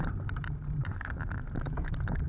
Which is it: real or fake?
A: fake